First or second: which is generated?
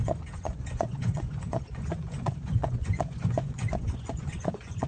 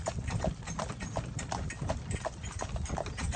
first